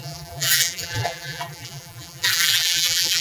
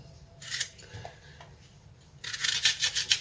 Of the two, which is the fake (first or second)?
first